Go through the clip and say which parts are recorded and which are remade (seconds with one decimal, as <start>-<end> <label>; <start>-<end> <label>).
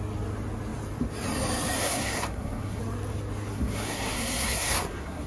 0.0-1.8 recorded; 1.8-2.8 remade; 2.8-3.5 recorded; 3.5-5.3 remade